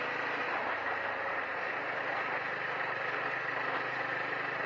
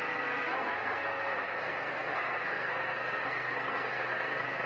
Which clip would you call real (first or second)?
first